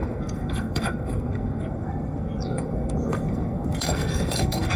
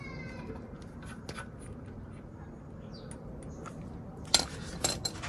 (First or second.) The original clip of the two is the second